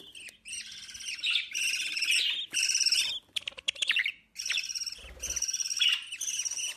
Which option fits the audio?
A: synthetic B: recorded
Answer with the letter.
B